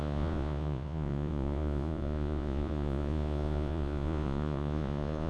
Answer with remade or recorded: remade